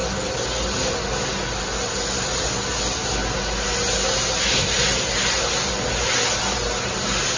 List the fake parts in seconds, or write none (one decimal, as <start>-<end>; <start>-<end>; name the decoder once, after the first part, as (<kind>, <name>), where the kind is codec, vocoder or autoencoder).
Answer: none